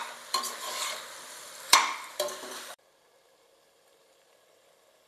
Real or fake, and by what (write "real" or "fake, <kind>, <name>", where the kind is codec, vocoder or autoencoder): fake, vocoder, BigVGAN v2